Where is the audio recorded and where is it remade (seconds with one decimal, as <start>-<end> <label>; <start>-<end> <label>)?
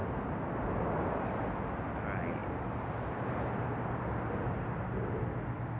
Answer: 0.0-5.8 recorded